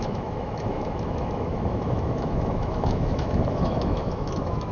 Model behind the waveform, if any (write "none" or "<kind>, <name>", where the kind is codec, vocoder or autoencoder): autoencoder, DAC-VAE